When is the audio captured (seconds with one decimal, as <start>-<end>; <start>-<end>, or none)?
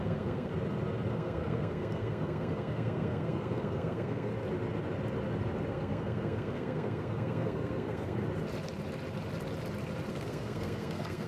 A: 0.5-1.1; 4.3-5.7; 8.2-10.1